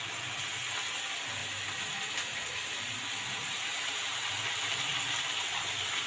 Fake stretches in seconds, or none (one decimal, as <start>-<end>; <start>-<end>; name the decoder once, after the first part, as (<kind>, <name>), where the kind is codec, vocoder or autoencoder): 1.4-5.1 (vocoder, BigVGAN v2)